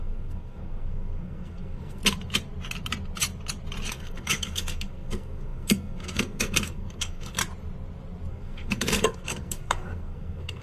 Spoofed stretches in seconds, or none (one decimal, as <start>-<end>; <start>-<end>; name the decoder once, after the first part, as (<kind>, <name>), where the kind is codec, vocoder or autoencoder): 0.0-2.0 (codec, SNAC); 3.9-7.4; 8.3-10.6